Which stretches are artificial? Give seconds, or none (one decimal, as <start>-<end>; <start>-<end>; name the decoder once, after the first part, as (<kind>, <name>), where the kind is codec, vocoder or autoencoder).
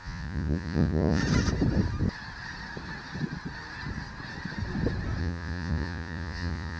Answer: 0.0-1.2 (vocoder, Vocos); 5.2-6.8